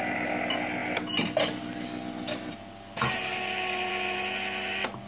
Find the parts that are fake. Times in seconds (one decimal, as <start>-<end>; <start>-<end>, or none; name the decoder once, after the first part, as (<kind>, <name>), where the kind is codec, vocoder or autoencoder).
none